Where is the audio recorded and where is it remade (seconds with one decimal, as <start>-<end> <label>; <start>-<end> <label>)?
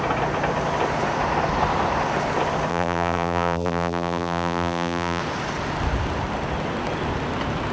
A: 0.0-2.7 recorded; 2.7-5.2 remade; 5.2-7.7 recorded